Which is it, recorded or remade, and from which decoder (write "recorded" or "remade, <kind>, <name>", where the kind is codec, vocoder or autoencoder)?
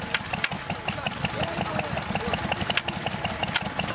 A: recorded